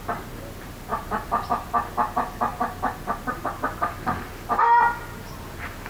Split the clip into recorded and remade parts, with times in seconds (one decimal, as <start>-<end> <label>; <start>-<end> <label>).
0.0-0.9 recorded; 0.9-1.5 remade; 1.5-5.9 recorded